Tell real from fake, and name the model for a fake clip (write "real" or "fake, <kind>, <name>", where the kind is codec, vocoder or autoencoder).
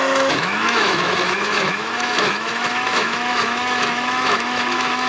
fake, autoencoder, DAC-VAE